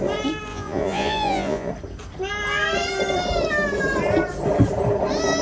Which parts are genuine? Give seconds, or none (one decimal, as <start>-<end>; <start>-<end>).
0.0-0.5; 1.7-5.4